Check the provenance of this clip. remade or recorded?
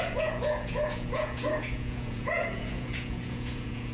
remade